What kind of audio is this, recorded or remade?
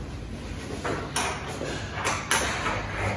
recorded